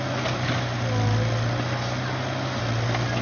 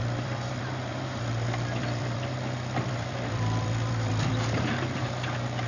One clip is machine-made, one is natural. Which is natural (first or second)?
first